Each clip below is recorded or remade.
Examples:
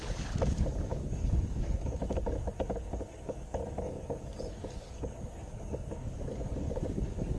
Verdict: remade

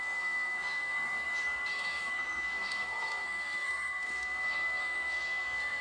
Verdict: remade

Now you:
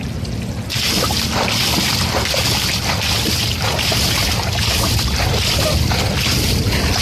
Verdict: recorded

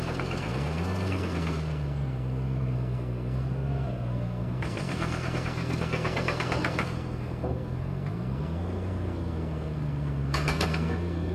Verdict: remade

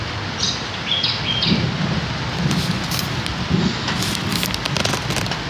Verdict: recorded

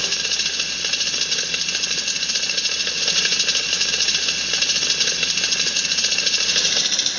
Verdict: recorded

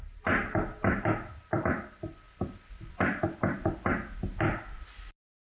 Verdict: recorded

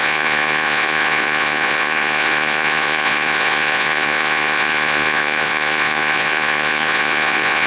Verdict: remade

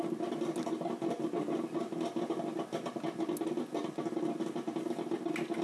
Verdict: recorded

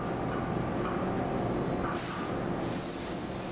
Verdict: recorded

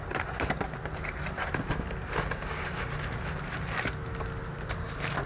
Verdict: recorded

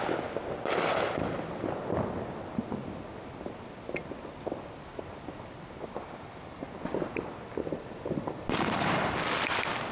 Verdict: recorded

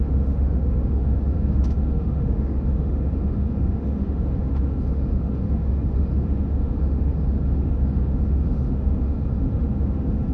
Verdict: remade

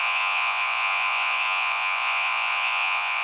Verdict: remade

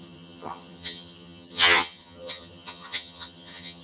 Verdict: remade